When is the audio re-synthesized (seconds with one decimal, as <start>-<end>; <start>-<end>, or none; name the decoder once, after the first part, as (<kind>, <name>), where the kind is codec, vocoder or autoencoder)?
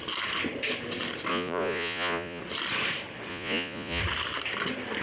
1.3-2.4 (vocoder, Vocos); 3.3-4.0